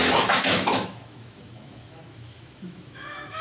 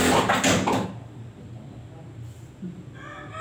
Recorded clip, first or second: second